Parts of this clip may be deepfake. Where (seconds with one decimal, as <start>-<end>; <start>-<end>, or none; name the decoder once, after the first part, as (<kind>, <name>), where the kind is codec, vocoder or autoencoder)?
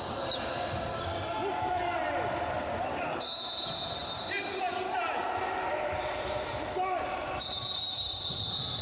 none